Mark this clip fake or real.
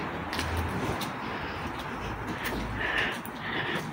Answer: real